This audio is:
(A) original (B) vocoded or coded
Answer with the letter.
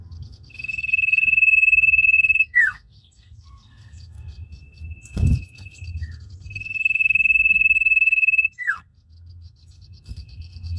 B